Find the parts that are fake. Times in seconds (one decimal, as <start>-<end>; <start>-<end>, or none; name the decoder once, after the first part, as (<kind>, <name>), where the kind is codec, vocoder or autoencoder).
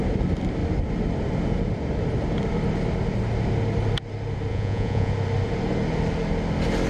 4.5-5.1 (vocoder, Vocos)